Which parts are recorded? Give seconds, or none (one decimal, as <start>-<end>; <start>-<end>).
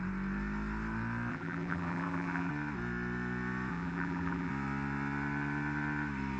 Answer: 0.0-1.3; 2.5-3.7; 4.5-6.4